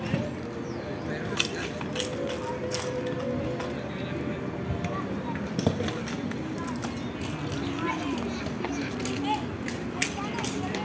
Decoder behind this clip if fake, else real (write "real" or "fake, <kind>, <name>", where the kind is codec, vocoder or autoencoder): real